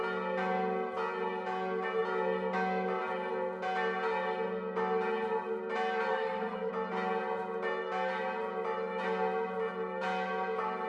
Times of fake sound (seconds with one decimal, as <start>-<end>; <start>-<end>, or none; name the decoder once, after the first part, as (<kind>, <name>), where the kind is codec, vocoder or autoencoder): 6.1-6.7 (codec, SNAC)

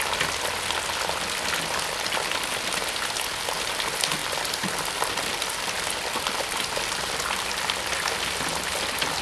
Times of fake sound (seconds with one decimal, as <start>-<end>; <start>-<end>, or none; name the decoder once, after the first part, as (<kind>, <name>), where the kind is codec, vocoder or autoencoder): 4.2-7.5 (vocoder, BigVGAN v2)

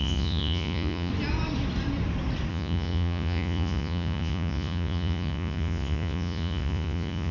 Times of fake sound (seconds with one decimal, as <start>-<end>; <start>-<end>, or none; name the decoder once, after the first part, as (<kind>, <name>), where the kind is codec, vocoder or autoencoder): 0.0-1.1 (vocoder, Vocos); 2.5-7.3

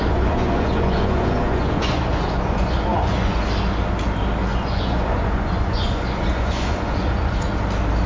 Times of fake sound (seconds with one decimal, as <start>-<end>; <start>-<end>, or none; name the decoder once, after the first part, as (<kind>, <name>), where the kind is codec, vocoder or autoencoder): 0.0-3.4 (vocoder, Vocos); 4.5-7.5

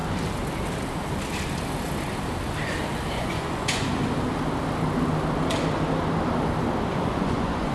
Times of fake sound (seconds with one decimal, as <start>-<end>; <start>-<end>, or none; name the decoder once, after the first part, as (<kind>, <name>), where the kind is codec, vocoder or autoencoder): 3.1-4.0 (vocoder, Vocos); 6.9-7.7